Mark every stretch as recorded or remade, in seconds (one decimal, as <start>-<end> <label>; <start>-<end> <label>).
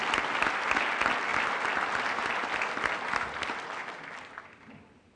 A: 0.0-5.2 recorded